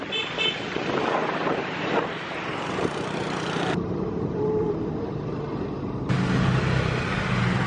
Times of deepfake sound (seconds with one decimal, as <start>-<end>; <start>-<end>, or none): 1.2-4.7